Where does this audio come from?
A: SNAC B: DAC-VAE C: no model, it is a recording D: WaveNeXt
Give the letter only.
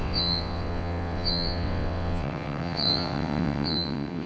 D